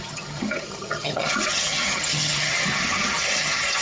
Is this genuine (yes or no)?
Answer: no